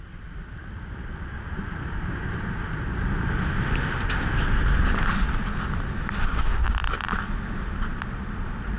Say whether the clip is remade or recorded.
recorded